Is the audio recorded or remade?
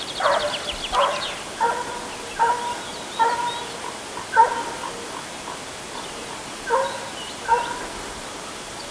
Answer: recorded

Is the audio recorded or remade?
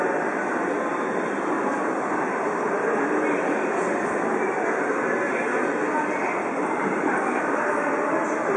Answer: recorded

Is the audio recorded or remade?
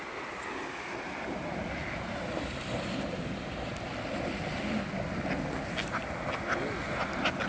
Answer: recorded